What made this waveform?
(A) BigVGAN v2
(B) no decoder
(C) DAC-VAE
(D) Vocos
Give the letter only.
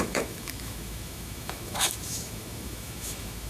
C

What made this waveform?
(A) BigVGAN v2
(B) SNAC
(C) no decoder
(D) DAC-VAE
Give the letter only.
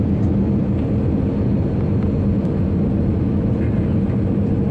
C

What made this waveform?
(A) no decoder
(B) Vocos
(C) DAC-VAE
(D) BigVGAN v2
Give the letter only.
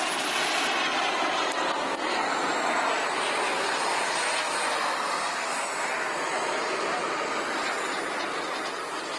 A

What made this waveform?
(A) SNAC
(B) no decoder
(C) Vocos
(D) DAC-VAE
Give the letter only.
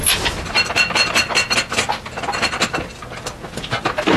B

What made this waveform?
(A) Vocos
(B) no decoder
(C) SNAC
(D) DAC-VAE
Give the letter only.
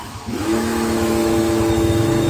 D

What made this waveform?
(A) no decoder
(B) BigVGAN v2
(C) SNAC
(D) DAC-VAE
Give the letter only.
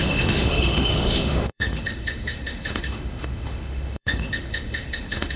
D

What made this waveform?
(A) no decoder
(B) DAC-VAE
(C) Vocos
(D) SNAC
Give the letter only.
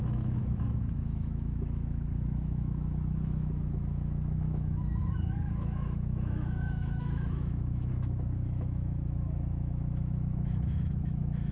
B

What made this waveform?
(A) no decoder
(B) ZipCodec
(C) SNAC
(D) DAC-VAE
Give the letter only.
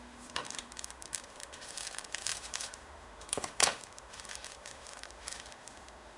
D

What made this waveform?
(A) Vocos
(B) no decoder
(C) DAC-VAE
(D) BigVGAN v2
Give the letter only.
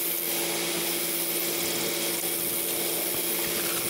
B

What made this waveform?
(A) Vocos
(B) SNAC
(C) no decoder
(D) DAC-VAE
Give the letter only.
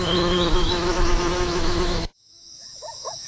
D